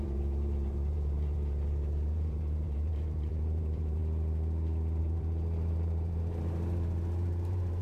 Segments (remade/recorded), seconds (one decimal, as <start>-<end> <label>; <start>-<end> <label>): 0.0-4.0 remade; 4.0-5.0 recorded; 5.0-7.8 remade